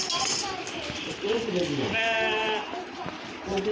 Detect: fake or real real